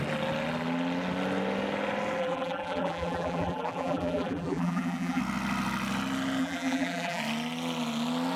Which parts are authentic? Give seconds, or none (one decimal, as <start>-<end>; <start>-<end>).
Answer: 0.0-2.2; 5.2-6.4; 7.2-8.4